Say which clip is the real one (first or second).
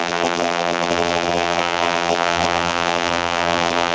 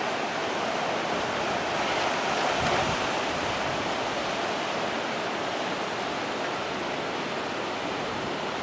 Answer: second